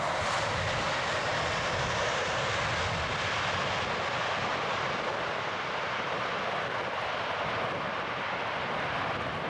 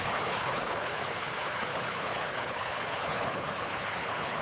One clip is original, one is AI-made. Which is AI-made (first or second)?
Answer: second